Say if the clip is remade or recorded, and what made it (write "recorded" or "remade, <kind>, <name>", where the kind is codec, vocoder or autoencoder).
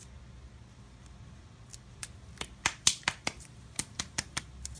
recorded